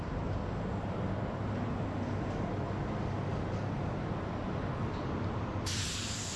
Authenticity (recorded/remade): recorded